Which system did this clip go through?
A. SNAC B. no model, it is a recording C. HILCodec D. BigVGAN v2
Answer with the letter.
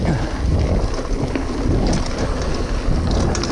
B